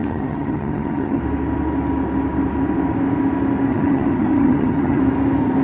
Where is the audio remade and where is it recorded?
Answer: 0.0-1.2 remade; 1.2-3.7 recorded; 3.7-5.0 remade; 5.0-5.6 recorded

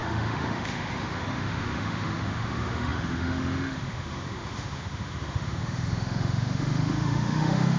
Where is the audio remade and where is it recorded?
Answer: 0.0-7.8 remade

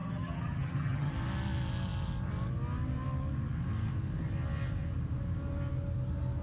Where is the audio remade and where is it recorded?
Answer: 0.0-1.1 remade; 1.1-6.4 recorded

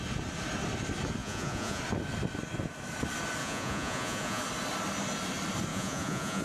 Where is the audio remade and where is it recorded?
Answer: 0.0-1.2 recorded; 1.2-1.8 remade; 1.8-3.4 recorded; 3.4-4.4 remade; 4.4-5.7 recorded; 5.7-6.4 remade